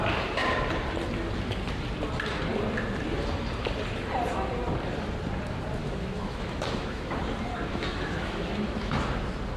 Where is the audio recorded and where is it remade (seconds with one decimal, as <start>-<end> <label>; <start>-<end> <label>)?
0.0-5.8 recorded; 5.8-7.2 remade; 7.2-7.7 recorded; 7.7-9.2 remade; 9.2-9.6 recorded